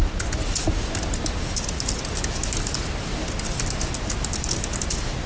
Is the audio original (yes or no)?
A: yes